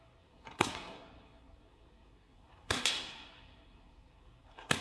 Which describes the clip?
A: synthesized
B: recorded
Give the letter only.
A